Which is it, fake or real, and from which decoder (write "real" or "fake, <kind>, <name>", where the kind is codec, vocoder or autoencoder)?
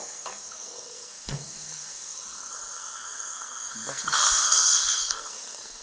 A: fake, codec, SNAC